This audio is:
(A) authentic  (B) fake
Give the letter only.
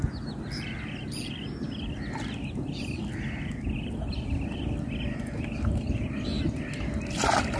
A